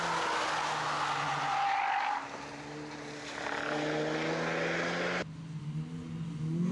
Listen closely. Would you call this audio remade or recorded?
recorded